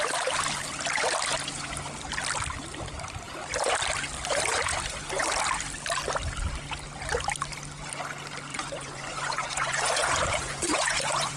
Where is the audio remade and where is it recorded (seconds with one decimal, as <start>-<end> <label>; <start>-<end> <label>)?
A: 0.0-8.5 recorded; 8.5-11.4 remade